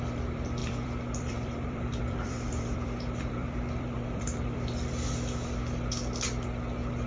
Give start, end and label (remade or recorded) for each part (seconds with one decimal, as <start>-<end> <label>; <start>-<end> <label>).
0.0-0.6 recorded; 0.6-4.9 remade; 4.9-7.1 recorded